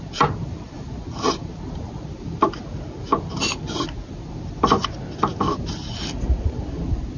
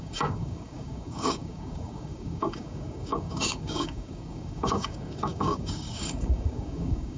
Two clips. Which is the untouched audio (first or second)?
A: first